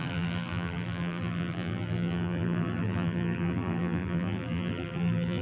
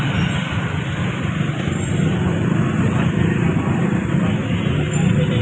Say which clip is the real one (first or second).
second